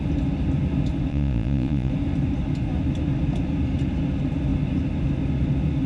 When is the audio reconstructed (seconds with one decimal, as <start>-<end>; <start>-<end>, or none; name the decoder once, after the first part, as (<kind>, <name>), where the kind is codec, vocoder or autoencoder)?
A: 1.1-1.9 (vocoder, Vocos)